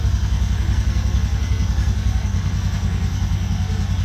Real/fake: fake